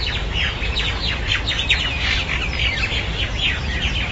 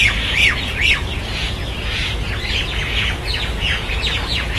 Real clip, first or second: first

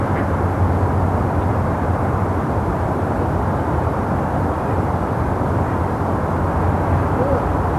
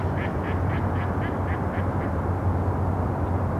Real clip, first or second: second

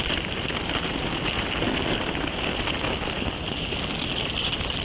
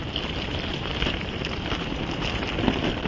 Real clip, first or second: first